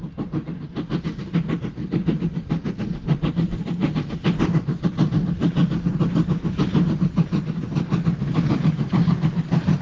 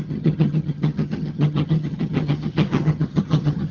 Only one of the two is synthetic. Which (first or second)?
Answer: second